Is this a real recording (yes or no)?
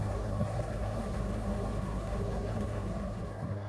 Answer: no